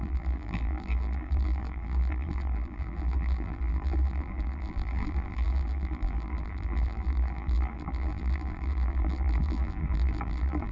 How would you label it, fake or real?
fake